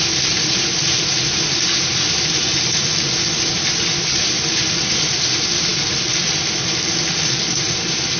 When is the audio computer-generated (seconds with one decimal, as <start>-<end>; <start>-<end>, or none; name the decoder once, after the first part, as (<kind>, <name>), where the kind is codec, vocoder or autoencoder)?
none